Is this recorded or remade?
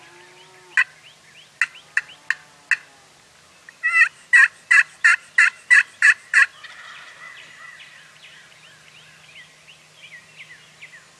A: recorded